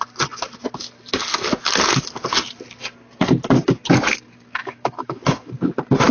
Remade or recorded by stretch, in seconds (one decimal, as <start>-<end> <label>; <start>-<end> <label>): 0.0-4.6 recorded; 4.6-5.5 remade; 5.5-6.1 recorded